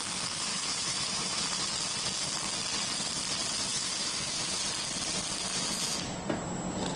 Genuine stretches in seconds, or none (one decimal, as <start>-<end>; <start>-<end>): 0.0-0.5; 1.4-3.7; 4.6-7.0